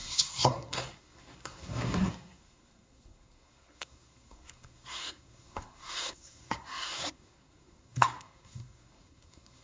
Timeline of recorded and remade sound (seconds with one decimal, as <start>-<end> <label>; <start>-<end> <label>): 0.0-9.6 remade